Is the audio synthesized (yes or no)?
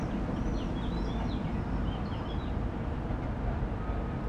no